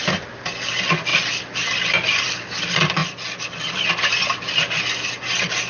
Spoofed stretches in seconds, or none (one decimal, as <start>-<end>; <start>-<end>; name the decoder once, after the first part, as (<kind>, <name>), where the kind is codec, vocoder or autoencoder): none